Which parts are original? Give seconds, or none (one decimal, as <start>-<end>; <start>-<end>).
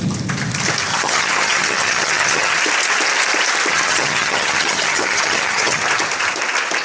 0.0-0.9; 2.6-3.7; 5.8-6.8